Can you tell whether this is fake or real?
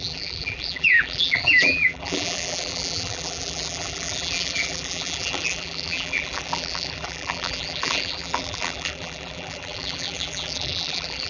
fake